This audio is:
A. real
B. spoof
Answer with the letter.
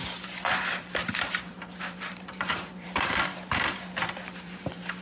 B